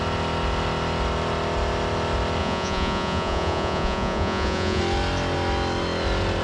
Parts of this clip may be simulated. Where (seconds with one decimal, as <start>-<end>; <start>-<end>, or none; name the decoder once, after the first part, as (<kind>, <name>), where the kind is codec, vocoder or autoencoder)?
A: 2.4-4.8 (vocoder, Vocos)